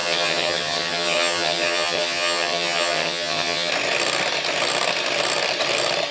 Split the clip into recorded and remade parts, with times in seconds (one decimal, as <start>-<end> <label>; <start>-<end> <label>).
0.0-3.7 remade; 3.7-6.1 recorded